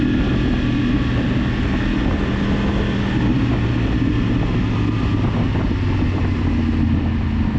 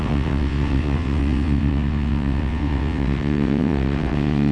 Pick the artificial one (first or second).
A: second